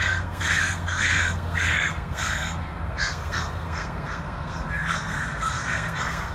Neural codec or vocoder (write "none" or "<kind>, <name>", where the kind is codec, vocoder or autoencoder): codec, SNAC